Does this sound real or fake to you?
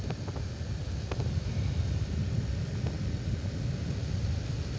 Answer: real